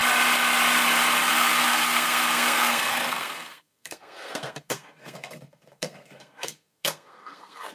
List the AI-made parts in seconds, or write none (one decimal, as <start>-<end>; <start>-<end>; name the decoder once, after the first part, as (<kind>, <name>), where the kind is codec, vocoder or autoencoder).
1.3-7.7 (codec, SNAC)